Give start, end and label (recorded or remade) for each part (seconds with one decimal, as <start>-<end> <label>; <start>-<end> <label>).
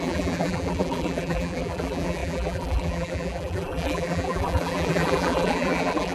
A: 0.0-6.1 remade